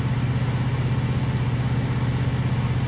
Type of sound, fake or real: real